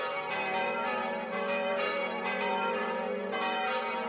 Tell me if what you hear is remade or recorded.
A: remade